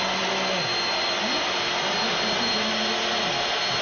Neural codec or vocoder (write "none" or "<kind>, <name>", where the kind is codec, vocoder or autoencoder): none